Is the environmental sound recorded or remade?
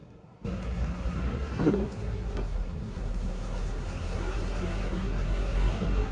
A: remade